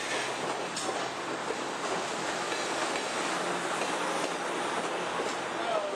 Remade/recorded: recorded